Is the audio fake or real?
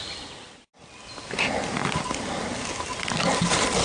real